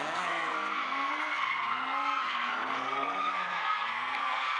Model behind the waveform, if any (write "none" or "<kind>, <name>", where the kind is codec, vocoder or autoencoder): codec, SNAC